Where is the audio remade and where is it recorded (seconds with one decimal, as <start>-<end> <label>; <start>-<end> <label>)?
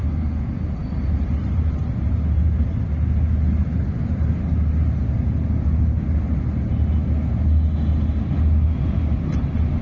0.0-0.8 recorded; 0.8-1.8 remade; 1.8-9.8 recorded